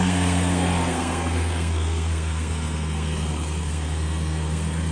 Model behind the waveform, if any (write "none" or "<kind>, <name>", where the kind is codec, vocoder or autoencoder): codec, SNAC